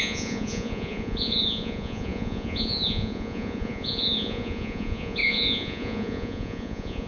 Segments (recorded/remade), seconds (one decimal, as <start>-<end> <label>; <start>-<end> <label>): 0.0-7.1 remade